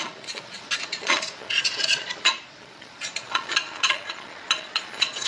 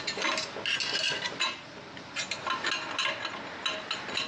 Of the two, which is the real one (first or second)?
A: second